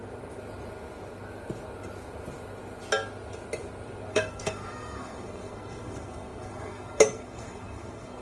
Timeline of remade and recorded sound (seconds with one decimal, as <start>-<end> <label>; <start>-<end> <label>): 0.0-4.1 recorded; 4.1-8.2 remade